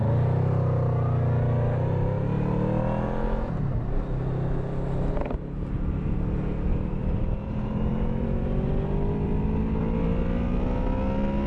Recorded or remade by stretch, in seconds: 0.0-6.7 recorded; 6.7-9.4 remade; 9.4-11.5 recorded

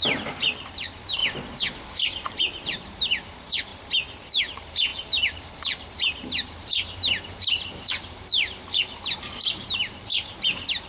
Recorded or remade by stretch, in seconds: 0.0-1.2 remade; 1.2-2.0 recorded; 2.0-3.7 remade; 3.7-4.4 recorded; 4.4-10.9 remade

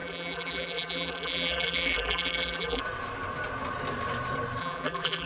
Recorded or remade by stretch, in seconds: 0.0-2.8 remade; 2.8-4.6 recorded; 4.6-5.3 remade

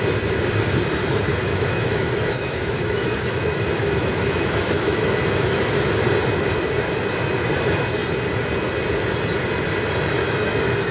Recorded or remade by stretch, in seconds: 0.0-1.4 recorded; 1.4-5.7 remade; 5.7-10.9 recorded

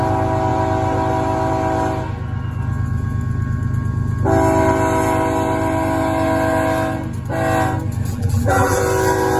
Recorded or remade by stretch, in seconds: 0.0-8.1 recorded; 8.1-8.8 remade; 8.8-9.4 recorded

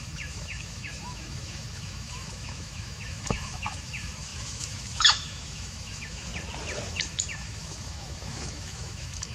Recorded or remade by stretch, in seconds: 0.0-6.3 remade; 6.3-6.9 recorded; 6.9-9.3 remade